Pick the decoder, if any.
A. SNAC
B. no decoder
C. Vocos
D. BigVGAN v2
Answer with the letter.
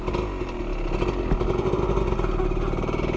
B